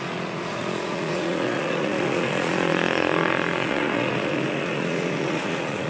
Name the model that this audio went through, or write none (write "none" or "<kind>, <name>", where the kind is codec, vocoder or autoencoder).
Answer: vocoder, Vocos